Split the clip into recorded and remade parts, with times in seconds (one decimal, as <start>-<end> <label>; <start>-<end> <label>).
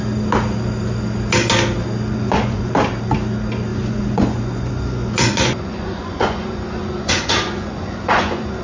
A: 0.0-2.1 recorded; 2.1-2.7 remade; 2.7-3.7 recorded; 3.7-8.6 remade